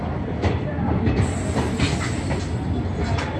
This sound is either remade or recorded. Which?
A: recorded